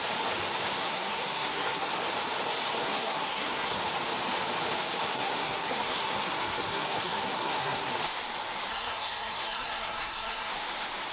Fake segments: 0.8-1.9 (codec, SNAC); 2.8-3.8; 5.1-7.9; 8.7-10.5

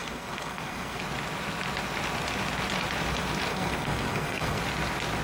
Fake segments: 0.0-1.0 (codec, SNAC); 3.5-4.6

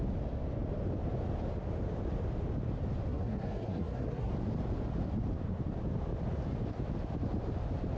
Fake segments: 3.1-4.3 (codec, SNAC)

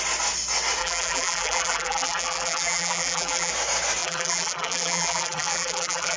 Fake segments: 0.8-3.5 (vocoder, BigVGAN v2); 4.0-6.2

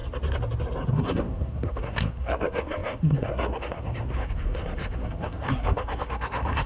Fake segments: 0.9-6.7 (codec, SNAC)

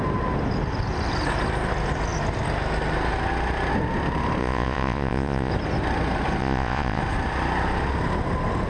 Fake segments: 4.4-5.5 (vocoder, Vocos); 6.4-7.0

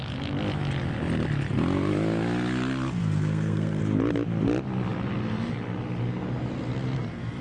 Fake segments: 3.0-3.8 (codec, SNAC)

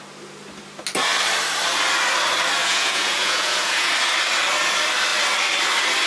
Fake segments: 2.6-3.9 (vocoder, Vocos)